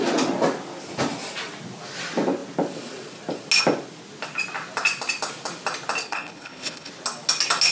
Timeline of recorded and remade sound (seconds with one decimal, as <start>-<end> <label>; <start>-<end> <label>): 0.0-6.0 recorded; 6.0-6.9 remade; 6.9-7.7 recorded